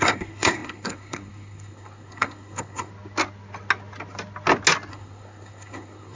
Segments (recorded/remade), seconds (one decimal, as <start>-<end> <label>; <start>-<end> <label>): 0.0-2.9 remade; 2.9-4.9 recorded; 4.9-6.2 remade